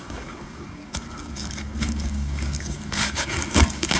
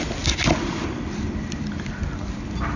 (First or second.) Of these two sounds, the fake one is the first